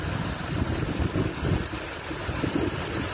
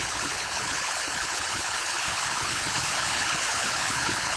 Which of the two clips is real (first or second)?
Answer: first